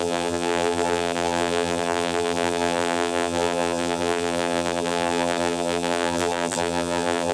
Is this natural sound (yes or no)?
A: no